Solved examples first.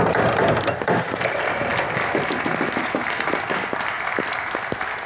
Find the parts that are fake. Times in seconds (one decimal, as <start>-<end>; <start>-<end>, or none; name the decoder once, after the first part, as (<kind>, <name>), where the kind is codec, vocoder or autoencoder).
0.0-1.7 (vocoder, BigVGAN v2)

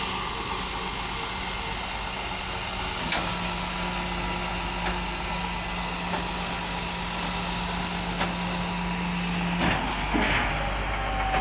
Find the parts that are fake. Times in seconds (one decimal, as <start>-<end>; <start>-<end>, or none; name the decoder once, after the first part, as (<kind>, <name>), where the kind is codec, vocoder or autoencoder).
9.9-10.5 (codec, SNAC)

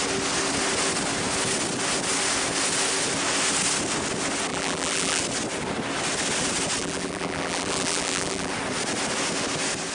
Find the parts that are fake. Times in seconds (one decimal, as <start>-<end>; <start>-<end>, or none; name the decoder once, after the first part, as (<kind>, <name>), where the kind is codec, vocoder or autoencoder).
4.5-5.2 (vocoder, BigVGAN v2); 6.8-8.5

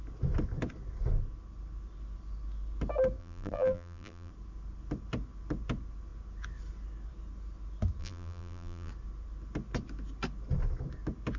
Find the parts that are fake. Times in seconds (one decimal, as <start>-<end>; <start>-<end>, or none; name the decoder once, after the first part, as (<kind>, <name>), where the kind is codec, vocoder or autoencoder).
3.2-4.3 (vocoder, BigVGAN v2); 8.0-8.9

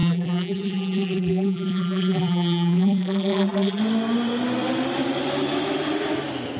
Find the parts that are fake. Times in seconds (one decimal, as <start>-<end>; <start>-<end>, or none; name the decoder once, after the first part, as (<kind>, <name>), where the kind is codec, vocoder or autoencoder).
0.0-3.8 (vocoder, BigVGAN v2)

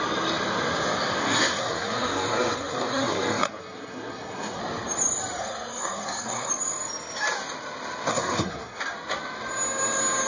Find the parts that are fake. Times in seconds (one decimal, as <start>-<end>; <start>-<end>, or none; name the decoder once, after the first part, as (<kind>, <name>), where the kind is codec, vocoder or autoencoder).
1.2-4.6 (codec, SNAC); 5.4-6.5; 8.1-8.8